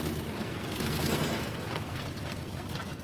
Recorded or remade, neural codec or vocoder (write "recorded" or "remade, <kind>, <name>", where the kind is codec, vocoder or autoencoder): remade, codec, SNAC